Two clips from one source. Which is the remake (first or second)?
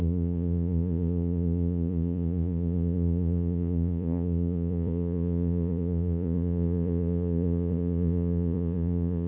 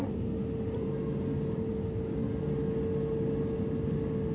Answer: first